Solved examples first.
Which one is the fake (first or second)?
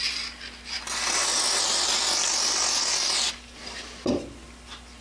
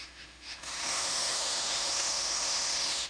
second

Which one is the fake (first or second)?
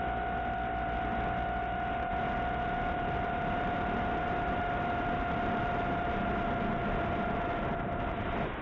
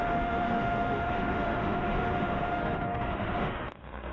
second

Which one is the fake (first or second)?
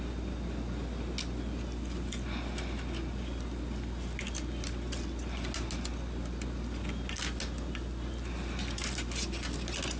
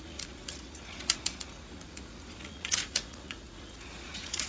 second